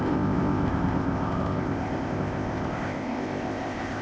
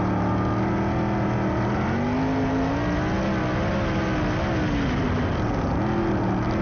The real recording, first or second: second